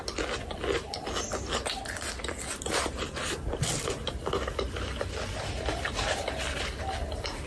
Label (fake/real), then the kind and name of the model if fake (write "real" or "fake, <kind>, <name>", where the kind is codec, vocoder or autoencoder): real